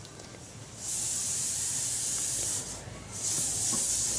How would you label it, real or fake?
real